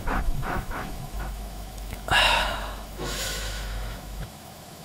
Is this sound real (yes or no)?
no